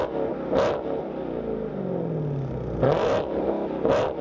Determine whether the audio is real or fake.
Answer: real